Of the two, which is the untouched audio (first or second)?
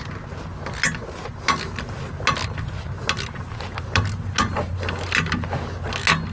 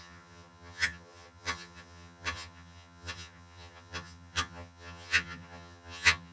first